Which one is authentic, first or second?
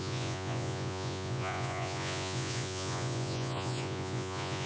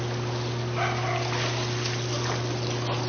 second